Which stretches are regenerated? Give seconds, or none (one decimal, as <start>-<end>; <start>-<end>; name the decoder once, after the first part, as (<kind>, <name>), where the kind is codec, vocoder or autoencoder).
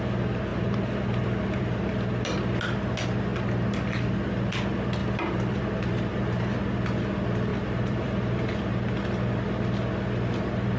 0.5-1.6 (vocoder, BigVGAN v2); 5.0-5.6; 7.5-8.7